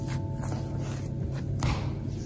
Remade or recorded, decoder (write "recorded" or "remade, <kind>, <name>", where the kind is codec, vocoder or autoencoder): recorded